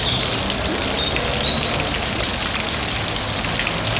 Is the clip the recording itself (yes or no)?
yes